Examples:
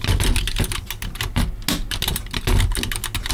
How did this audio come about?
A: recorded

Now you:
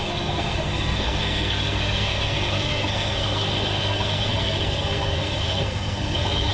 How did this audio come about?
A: remade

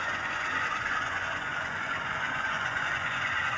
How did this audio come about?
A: remade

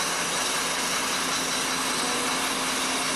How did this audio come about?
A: recorded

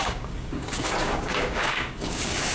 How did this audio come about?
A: remade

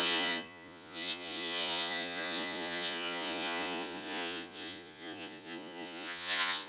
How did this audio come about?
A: remade